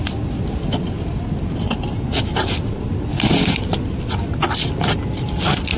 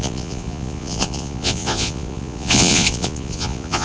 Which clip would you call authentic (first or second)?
first